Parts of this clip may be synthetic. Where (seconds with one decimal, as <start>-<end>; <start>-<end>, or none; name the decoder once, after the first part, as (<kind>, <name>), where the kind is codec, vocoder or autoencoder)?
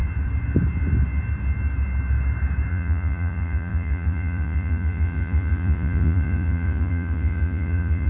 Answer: 2.7-8.1 (vocoder, Vocos)